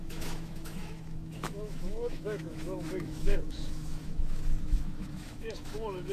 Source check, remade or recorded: remade